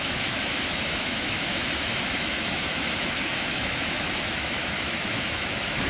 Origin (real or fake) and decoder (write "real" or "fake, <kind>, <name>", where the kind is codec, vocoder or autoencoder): fake, autoencoder, DAC-VAE